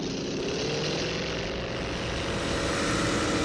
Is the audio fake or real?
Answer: real